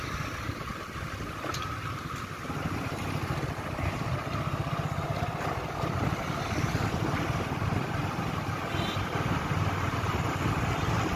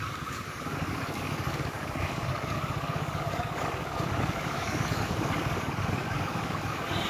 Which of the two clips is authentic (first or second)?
first